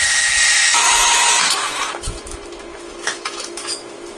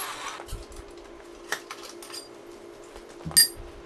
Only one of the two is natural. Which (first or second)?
second